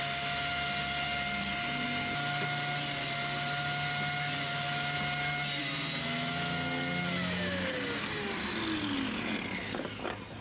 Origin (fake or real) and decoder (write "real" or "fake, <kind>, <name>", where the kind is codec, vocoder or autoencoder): real